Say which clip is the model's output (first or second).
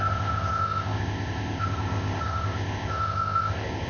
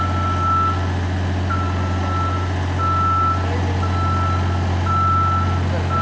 first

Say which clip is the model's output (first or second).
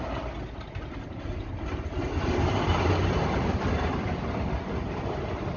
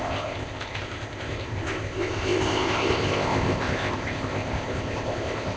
second